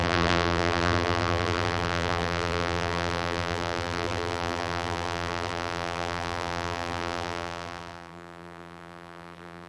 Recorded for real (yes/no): no